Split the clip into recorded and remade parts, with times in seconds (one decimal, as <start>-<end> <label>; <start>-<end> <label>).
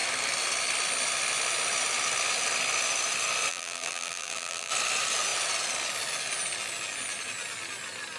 0.0-3.5 recorded; 3.5-4.7 remade; 4.7-8.2 recorded